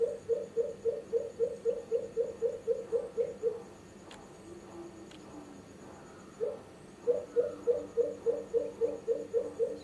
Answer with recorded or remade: recorded